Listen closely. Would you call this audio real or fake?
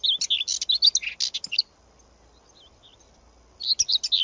real